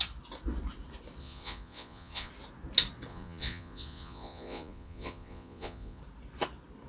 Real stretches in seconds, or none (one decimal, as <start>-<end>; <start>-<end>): 0.0-1.2; 2.3-3.1; 6.0-6.9